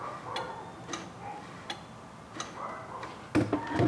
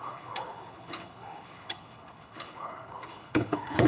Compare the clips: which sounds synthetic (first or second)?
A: second